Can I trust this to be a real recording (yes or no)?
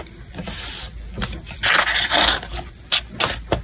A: yes